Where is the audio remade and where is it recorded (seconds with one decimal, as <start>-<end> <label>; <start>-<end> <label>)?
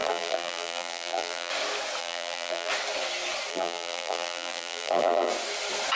0.0-1.5 remade; 1.5-2.0 recorded; 2.0-2.7 remade; 2.7-3.5 recorded; 3.5-5.3 remade; 5.3-6.0 recorded